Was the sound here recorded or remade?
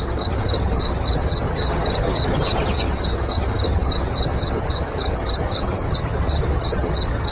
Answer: remade